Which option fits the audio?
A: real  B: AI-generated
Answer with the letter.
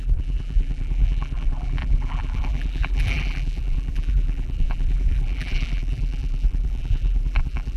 B